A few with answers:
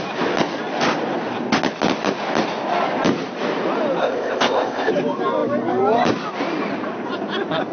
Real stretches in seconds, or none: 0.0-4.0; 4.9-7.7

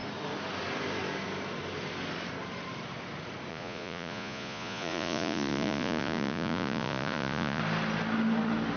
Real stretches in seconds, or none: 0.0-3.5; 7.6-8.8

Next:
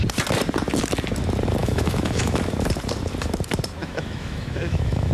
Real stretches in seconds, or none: 0.0-1.6; 2.4-3.8

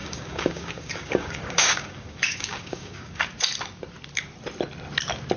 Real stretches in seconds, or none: 3.2-5.4

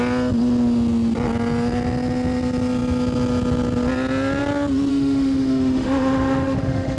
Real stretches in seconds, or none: 0.0-4.9